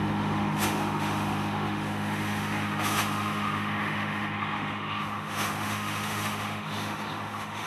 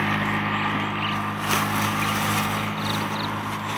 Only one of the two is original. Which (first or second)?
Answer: second